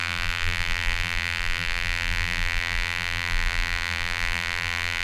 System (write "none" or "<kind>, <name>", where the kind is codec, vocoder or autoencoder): vocoder, BigVGAN v2